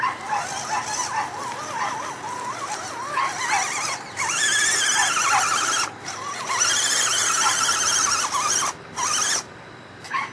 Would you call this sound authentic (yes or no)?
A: yes